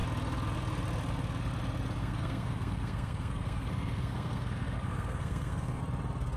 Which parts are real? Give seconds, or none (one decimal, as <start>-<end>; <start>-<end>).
0.0-2.0; 5.8-6.4